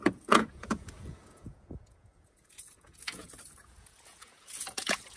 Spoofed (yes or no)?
yes